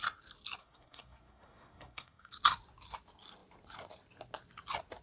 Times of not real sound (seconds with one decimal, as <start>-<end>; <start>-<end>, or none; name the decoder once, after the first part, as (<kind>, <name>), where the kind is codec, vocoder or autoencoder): 0.6-2.3 (codec, SNAC)